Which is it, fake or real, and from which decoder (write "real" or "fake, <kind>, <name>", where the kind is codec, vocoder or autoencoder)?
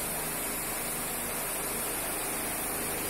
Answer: real